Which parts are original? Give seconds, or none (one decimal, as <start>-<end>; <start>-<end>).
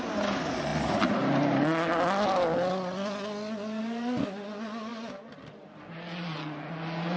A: 0.0-7.2